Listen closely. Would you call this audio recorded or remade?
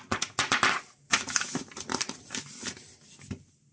recorded